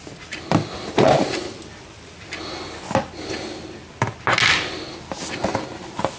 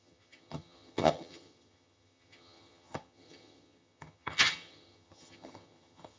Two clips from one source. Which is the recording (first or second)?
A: first